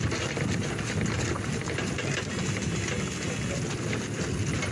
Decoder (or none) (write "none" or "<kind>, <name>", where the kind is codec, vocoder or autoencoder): none